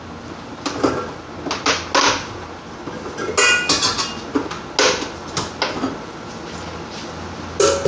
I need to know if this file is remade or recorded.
recorded